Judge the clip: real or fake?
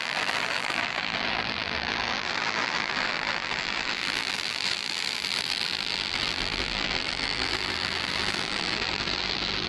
fake